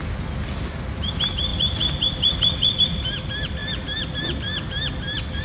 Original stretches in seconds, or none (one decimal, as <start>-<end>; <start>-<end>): 0.0-1.5; 2.8-5.4

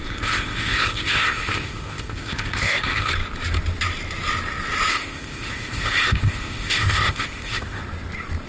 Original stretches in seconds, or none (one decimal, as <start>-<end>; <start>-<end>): 3.1-4.9; 7.8-8.5

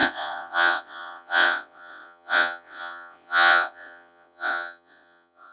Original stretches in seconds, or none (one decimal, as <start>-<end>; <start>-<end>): none

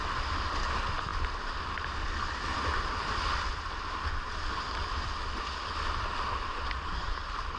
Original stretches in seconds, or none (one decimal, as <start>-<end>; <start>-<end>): 0.0-7.6

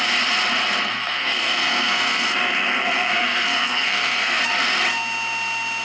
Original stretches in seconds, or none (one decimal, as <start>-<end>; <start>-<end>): 0.0-0.9; 4.4-5.8

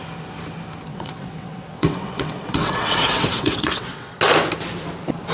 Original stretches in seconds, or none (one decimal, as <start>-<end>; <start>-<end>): 0.0-0.9; 4.1-5.3

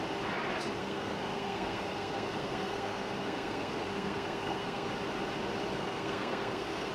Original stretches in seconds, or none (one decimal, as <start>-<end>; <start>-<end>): 0.0-0.8; 4.9-5.7

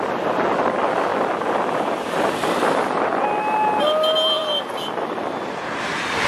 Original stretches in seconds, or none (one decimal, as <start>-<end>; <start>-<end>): 0.0-6.3